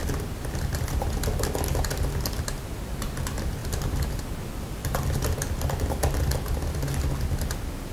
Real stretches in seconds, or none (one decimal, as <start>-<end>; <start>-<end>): 0.0-3.6; 4.2-4.8; 5.4-7.9